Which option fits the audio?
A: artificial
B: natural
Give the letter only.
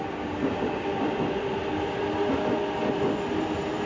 B